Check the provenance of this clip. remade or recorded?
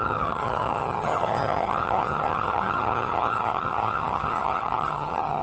remade